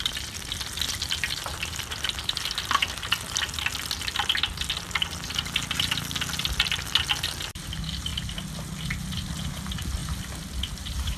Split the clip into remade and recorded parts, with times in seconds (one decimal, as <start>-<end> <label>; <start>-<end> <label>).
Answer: 0.0-2.8 remade; 2.8-6.4 recorded; 6.4-8.1 remade; 8.1-9.5 recorded; 9.5-10.0 remade; 10.0-10.7 recorded; 10.7-11.2 remade